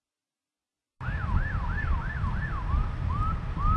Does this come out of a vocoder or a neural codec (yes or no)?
no